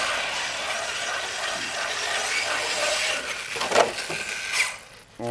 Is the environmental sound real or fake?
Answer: real